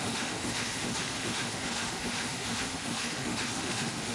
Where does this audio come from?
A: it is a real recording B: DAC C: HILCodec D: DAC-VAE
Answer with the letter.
D